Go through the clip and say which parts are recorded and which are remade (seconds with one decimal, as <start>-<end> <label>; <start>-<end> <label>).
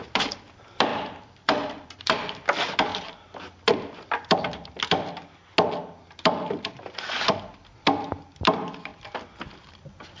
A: 0.0-0.9 recorded; 0.9-2.0 remade; 2.0-2.9 recorded; 2.9-4.4 remade; 4.4-10.2 recorded